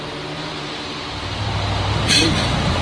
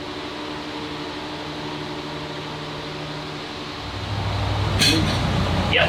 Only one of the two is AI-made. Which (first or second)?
first